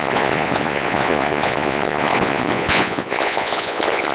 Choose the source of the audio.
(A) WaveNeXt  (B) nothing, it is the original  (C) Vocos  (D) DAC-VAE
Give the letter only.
C